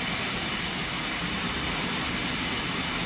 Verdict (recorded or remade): recorded